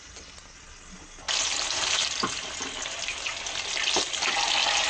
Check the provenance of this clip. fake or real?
real